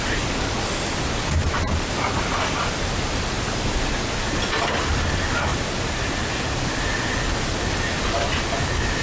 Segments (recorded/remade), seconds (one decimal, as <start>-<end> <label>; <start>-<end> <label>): 0.0-1.4 recorded; 1.4-1.9 remade; 1.9-5.5 recorded; 5.5-6.6 remade; 6.6-9.0 recorded